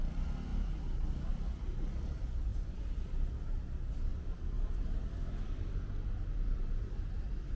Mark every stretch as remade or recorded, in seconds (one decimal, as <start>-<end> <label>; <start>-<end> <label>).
0.0-7.5 recorded